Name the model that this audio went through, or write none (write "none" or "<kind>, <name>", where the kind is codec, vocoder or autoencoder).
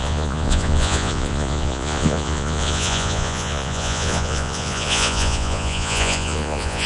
vocoder, Vocos